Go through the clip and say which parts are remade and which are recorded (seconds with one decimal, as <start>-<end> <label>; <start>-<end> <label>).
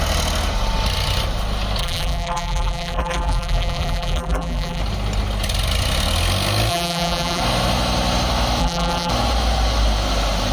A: 0.0-1.8 recorded; 1.8-4.8 remade; 4.8-6.7 recorded; 6.7-7.4 remade; 7.4-8.6 recorded; 8.6-9.1 remade; 9.1-10.5 recorded